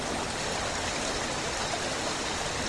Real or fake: real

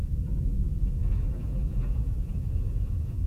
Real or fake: fake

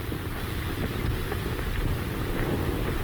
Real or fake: real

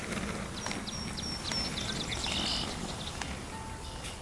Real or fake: real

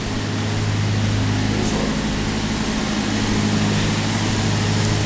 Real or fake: real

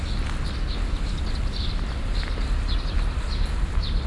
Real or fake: real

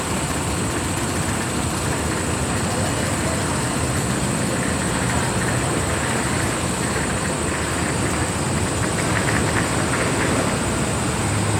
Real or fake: real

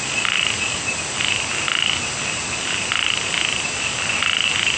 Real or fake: real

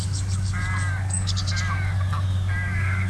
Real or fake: fake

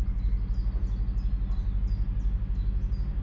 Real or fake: real